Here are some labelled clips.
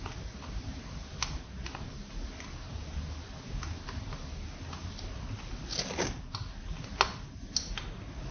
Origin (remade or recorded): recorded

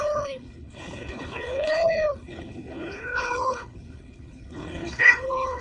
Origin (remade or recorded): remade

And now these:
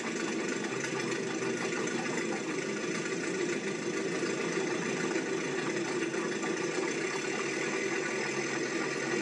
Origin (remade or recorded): recorded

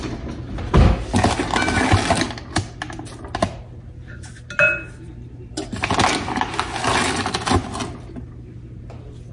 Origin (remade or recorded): recorded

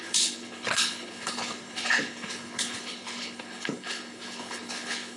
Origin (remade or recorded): remade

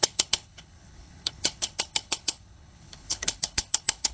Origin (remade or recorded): remade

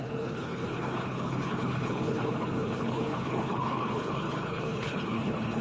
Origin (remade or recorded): remade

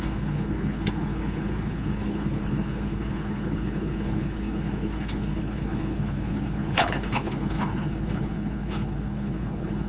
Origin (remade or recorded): remade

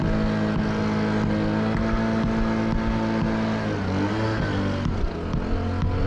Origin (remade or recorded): recorded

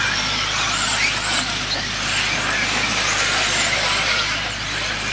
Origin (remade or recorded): recorded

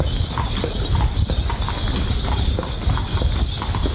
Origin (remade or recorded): recorded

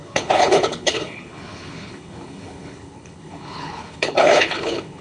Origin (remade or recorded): remade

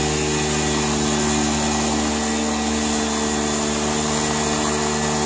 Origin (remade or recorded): recorded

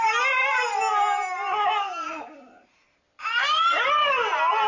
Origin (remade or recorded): recorded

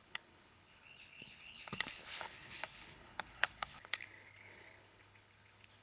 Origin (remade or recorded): remade